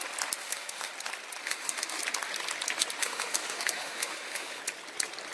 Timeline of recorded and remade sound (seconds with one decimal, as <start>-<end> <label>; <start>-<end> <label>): 0.0-0.4 recorded; 0.4-0.9 remade; 0.9-1.4 recorded; 1.4-2.0 remade; 2.0-3.0 recorded; 3.0-4.6 remade; 4.6-5.3 recorded